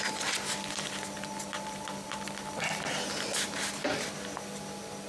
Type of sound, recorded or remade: recorded